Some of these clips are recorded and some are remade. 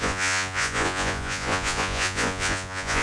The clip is remade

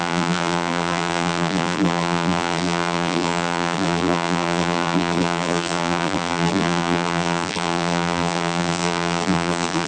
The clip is remade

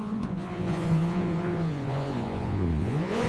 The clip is remade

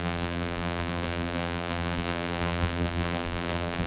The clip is remade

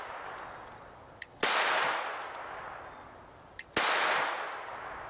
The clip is recorded